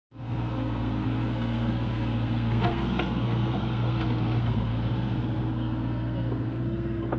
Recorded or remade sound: remade